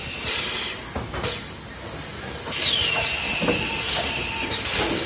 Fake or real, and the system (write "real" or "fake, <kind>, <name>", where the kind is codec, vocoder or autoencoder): real